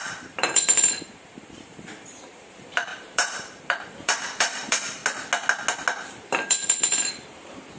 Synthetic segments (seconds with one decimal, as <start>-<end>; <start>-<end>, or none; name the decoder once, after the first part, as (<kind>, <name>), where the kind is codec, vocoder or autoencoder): 0.0-5.0 (vocoder, BigVGAN v2); 6.1-7.8

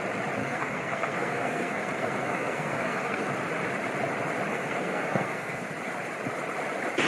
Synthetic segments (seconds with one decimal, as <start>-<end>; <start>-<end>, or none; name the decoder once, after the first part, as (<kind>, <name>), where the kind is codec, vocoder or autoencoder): 0.4-3.3 (codec, SNAC); 4.5-5.7

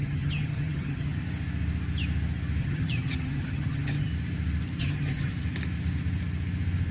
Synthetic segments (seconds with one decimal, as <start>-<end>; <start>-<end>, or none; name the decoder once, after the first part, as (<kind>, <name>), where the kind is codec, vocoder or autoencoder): 0.0-1.2 (vocoder, HiFi-GAN); 2.6-4.1; 4.8-5.3

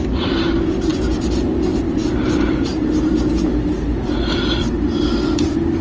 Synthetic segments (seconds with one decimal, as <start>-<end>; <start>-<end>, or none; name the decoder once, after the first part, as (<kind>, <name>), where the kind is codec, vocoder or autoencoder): none

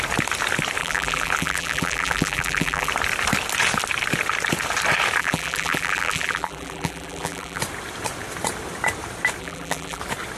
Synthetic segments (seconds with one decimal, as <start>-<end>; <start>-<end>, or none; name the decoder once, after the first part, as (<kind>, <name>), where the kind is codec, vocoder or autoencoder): 0.8-2.9 (vocoder, BigVGAN v2); 5.2-7.6; 9.4-10.0

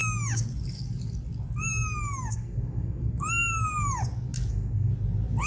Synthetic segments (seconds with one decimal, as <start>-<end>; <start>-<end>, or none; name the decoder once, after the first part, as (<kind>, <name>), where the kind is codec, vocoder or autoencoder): 2.3-3.2 (codec, SNAC); 4.5-4.9

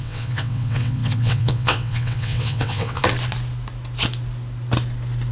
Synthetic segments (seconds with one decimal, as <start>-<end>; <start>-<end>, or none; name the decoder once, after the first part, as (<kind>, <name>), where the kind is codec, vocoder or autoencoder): 0.0-3.0 (vocoder, WaveNeXt)

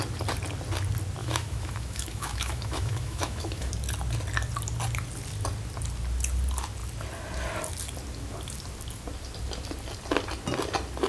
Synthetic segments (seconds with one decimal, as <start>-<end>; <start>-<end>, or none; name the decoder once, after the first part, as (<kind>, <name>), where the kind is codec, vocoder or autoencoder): 1.2-3.7 (autoencoder, DAC-VAE)